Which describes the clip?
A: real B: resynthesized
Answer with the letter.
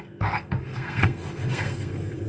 B